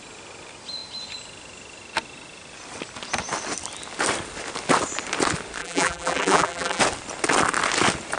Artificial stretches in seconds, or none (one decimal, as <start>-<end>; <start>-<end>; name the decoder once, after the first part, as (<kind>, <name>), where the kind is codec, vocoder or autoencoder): 5.6-6.8 (vocoder, BigVGAN v2)